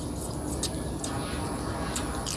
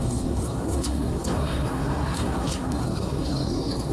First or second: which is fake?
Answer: second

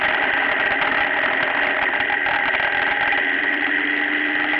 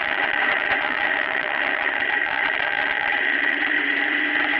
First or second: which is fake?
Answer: second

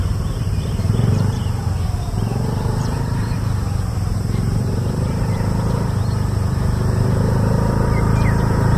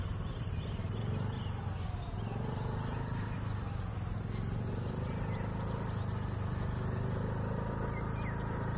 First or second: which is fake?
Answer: first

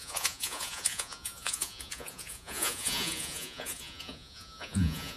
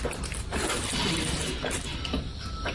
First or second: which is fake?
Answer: first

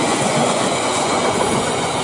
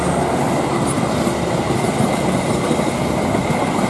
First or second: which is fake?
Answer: first